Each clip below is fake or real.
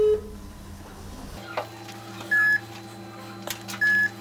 real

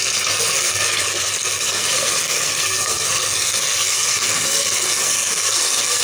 fake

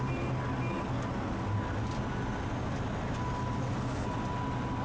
real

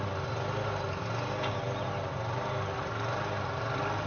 real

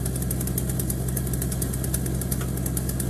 real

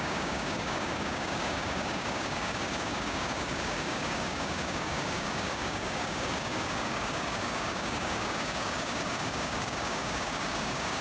fake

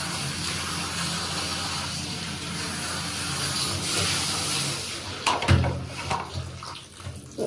real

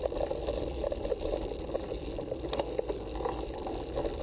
real